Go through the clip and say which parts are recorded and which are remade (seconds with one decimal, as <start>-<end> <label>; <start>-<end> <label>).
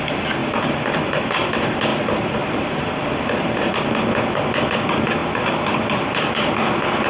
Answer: 0.0-0.4 recorded; 0.4-1.2 remade; 1.2-1.9 recorded; 1.9-3.7 remade; 3.7-7.1 recorded